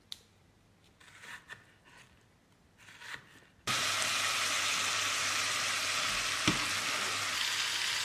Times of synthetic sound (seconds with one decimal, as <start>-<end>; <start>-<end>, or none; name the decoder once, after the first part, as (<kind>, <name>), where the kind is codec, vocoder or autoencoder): none